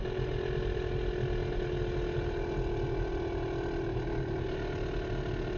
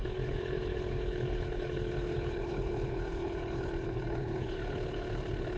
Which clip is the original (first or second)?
first